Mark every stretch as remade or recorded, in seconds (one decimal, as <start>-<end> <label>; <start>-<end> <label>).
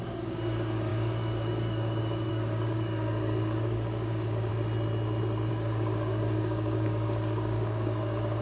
0.0-4.5 remade; 4.5-5.5 recorded; 5.5-8.4 remade